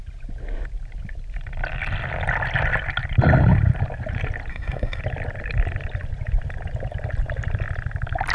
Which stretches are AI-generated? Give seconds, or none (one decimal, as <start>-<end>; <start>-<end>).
4.5-5.0